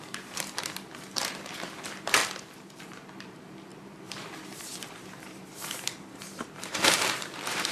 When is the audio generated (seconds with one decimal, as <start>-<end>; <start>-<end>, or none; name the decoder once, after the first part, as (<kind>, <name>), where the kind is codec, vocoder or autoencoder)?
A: 0.0-2.2 (vocoder, BigVGAN v2); 2.8-7.7